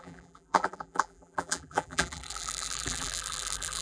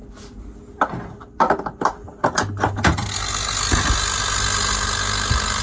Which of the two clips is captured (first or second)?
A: second